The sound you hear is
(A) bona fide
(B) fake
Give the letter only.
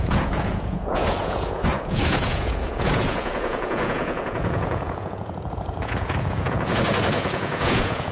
B